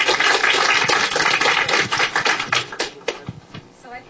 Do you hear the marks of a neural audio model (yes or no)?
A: no